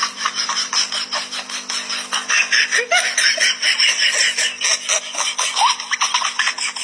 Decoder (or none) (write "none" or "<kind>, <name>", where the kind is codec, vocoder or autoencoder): none